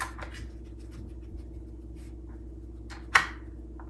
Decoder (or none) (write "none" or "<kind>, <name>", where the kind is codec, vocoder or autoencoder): none